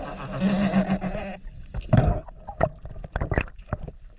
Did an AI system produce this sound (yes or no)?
no